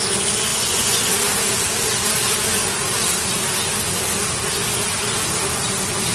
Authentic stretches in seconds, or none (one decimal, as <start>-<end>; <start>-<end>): 0.0-0.5; 1.0-6.1